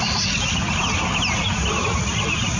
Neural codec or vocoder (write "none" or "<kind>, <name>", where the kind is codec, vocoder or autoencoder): none